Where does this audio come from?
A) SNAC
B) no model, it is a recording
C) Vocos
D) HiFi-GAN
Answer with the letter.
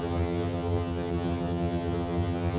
D